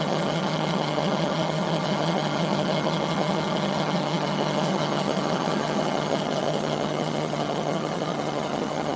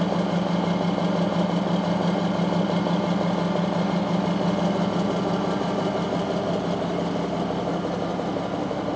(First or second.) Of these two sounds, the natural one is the second